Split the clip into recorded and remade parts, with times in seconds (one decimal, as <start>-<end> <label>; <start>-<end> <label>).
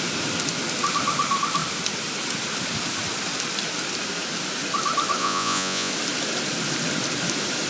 0.0-5.2 recorded; 5.2-5.9 remade; 5.9-7.7 recorded